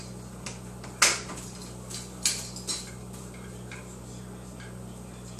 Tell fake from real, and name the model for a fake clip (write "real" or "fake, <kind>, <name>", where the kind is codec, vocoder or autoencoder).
real